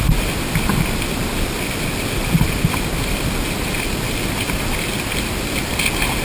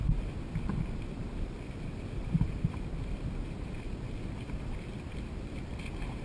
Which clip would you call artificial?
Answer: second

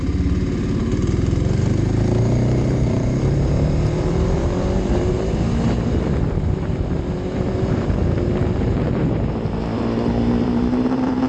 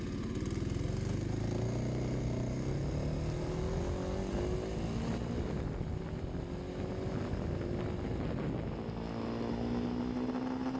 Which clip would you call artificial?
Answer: first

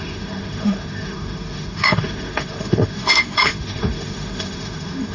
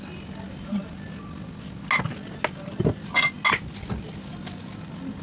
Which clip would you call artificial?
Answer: first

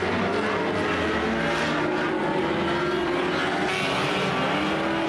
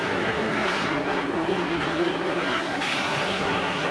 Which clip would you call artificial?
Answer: second